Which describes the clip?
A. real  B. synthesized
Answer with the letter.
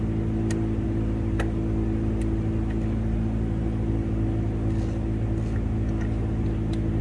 A